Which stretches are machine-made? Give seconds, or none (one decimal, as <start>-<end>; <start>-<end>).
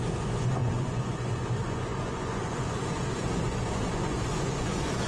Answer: 0.0-5.1